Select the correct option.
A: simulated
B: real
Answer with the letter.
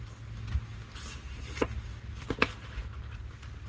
B